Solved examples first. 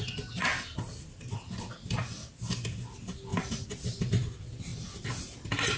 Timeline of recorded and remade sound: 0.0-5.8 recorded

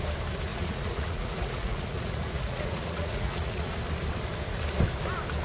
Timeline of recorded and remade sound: 0.0-0.5 recorded; 0.5-3.7 remade; 3.7-5.4 recorded

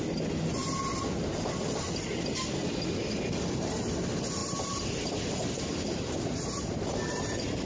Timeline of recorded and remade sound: 0.0-7.7 recorded

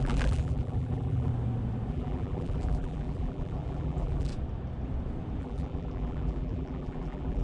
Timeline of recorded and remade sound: 0.0-1.3 remade; 1.3-1.9 recorded; 1.9-4.3 remade; 4.3-5.4 recorded; 5.4-7.4 remade